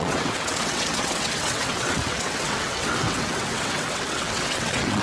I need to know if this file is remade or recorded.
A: remade